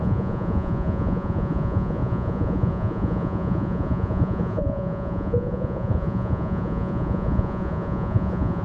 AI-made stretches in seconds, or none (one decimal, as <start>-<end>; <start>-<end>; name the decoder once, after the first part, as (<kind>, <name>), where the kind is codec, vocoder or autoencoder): 0.0-8.6 (vocoder, Vocos)